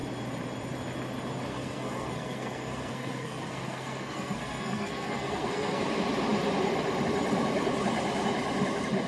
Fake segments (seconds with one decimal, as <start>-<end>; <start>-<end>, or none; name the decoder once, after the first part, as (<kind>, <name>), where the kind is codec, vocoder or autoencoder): 1.5-5.8 (codec, SNAC)